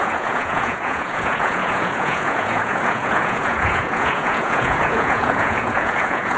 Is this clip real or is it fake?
fake